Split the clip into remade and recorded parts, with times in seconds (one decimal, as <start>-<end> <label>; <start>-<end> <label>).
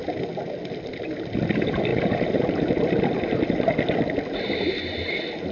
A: 0.0-1.9 recorded; 1.9-3.7 remade; 3.7-5.5 recorded